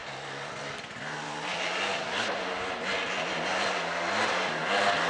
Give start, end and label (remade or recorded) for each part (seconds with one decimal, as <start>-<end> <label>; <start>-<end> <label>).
0.0-5.1 recorded